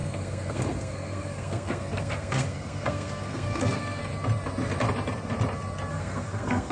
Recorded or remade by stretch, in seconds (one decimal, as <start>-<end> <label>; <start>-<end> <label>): 0.0-4.0 remade; 4.0-5.9 recorded; 5.9-6.7 remade